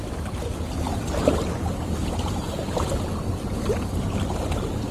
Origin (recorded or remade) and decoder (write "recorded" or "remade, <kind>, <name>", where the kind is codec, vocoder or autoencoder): recorded